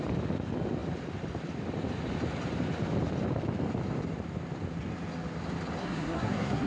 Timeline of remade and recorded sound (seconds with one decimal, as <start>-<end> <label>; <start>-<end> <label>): 0.0-5.8 recorded; 5.8-6.7 remade